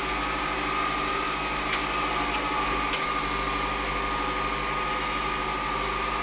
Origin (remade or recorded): recorded